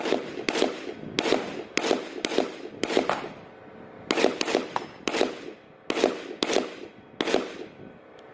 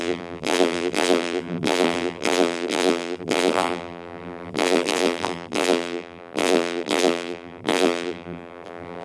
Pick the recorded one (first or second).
first